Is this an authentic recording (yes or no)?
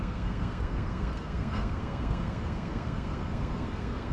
no